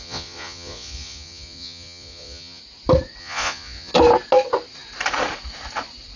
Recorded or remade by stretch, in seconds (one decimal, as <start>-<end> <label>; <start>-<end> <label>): 0.0-2.6 remade; 2.6-3.2 recorded; 3.2-3.9 remade; 3.9-6.2 recorded